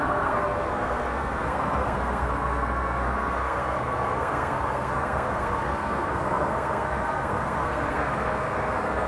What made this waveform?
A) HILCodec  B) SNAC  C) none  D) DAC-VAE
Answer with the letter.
B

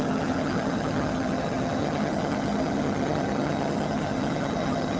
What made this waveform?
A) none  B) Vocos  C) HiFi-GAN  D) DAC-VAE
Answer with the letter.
C